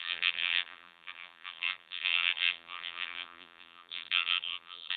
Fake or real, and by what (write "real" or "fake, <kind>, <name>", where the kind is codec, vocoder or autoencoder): fake, vocoder, BigVGAN v2